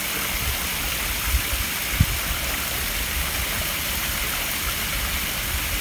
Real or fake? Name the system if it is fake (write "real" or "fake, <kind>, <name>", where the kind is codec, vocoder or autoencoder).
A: real